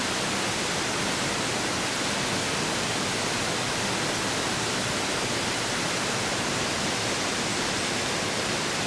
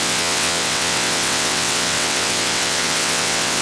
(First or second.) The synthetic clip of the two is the second